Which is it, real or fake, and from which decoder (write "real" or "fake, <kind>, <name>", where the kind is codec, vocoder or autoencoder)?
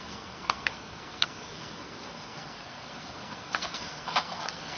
fake, codec, SNAC